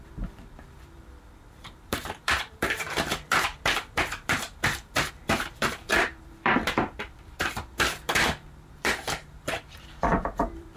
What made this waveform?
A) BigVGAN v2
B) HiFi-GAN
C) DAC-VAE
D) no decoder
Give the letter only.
A